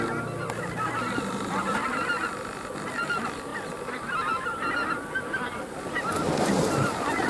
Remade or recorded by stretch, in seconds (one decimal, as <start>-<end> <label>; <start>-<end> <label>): 0.0-7.3 recorded